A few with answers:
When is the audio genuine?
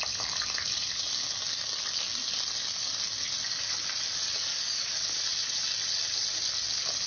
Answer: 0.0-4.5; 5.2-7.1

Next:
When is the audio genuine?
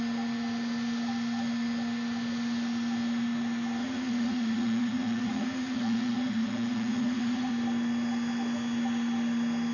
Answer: 0.0-3.8; 7.5-9.7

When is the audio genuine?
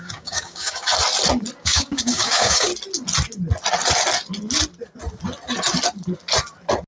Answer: 0.9-1.6; 2.7-6.9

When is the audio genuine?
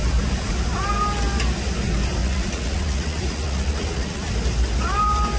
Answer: 0.0-2.2; 4.3-5.4